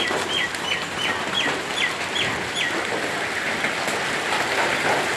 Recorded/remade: remade